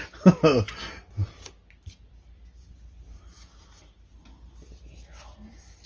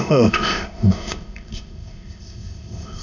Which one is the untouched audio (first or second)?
first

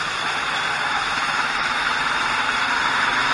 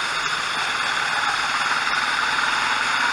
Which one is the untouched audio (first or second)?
second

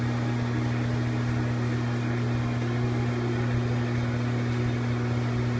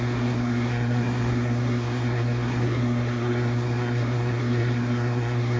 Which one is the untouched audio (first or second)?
first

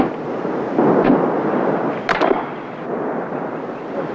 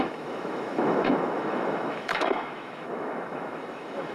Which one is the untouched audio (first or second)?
first